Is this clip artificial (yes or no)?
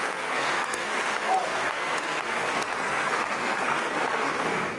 yes